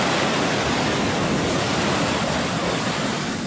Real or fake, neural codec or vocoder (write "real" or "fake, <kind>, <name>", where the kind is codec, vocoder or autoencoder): real